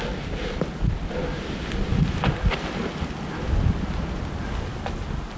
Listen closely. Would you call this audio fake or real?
real